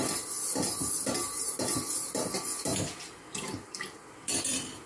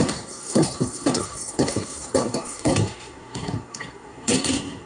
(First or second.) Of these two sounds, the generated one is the second